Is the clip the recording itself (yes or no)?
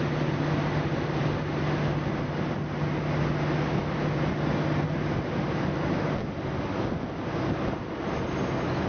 yes